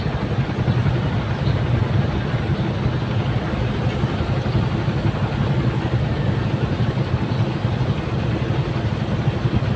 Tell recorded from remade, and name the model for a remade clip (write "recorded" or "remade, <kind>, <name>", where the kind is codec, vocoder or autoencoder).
recorded